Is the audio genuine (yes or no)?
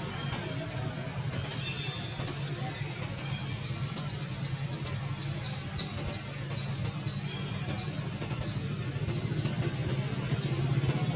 yes